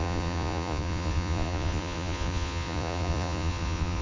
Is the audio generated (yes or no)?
yes